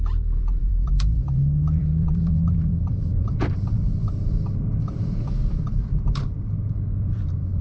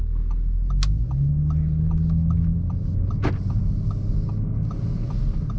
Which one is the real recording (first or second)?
second